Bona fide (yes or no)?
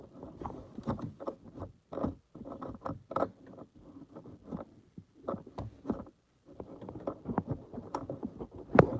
yes